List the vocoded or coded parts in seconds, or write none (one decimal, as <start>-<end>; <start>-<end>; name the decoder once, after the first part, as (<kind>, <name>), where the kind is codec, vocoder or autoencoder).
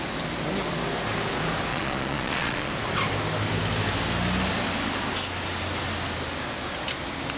1.7-2.7 (vocoder, Vocos)